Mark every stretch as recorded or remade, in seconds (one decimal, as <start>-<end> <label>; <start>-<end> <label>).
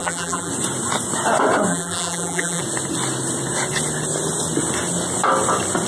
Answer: 0.0-0.5 remade; 0.5-1.7 recorded; 1.7-2.6 remade; 2.6-5.9 recorded